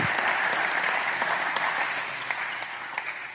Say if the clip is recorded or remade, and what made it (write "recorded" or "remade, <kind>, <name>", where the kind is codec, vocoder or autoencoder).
recorded